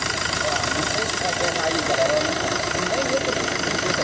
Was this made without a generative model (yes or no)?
no